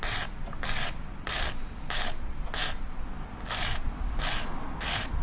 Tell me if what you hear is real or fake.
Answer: real